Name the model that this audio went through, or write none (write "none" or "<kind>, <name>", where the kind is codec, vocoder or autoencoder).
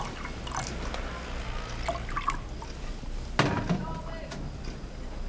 none